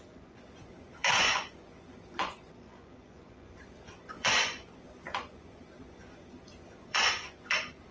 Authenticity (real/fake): fake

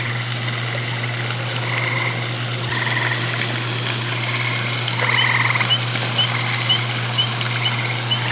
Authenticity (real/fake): real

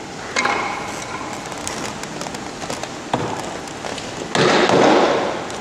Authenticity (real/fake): real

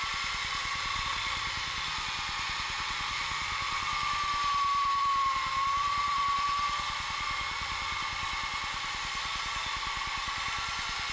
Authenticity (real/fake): fake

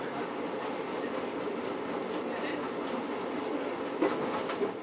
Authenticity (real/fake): real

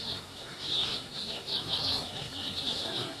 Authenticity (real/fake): fake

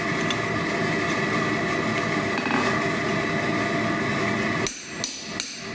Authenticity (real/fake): real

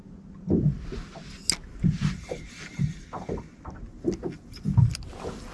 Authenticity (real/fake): real